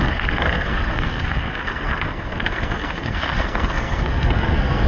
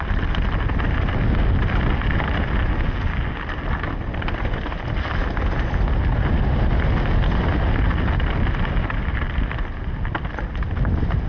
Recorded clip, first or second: second